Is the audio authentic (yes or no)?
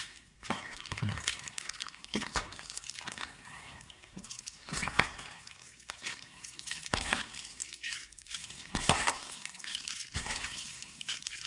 no